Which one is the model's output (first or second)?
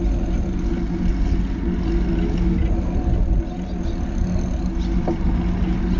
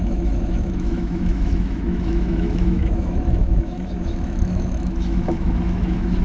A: second